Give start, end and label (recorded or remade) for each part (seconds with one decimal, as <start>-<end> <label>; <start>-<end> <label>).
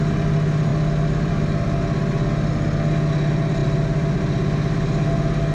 0.0-3.6 recorded; 3.6-4.2 remade; 4.2-5.5 recorded